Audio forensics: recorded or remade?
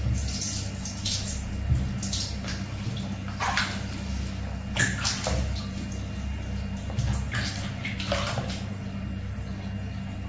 recorded